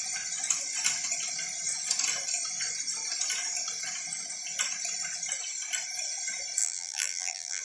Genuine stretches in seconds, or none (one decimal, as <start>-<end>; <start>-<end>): 0.0-6.6